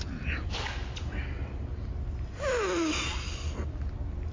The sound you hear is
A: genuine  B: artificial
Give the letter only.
A